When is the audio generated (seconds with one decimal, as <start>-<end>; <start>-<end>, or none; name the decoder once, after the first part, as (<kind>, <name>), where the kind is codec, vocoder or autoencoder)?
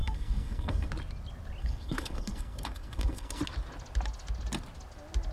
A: 0.0-0.9 (codec, SNAC); 1.6-3.4